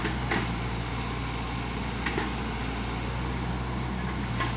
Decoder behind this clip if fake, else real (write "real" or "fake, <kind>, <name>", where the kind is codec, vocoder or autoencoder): real